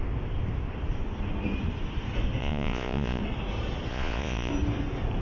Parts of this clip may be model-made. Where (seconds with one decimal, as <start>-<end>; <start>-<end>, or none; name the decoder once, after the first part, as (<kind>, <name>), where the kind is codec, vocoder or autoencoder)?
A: 2.4-3.2 (vocoder, Vocos); 3.9-4.5